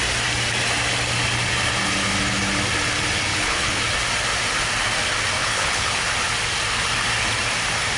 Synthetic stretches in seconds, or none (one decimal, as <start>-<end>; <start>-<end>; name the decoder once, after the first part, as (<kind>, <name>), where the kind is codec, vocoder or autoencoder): 3.3-3.8 (codec, HILCodec); 5.4-6.0